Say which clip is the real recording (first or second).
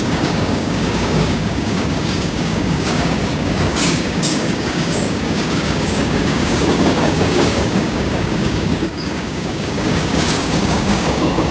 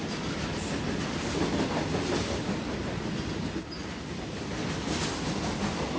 second